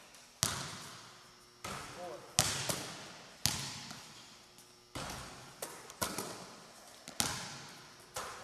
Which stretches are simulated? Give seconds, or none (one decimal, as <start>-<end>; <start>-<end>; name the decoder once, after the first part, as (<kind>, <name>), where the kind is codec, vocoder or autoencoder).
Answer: none